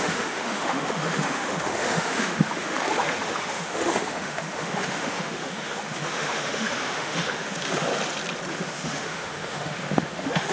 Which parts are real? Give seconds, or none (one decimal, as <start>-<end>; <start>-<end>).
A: 7.9-8.5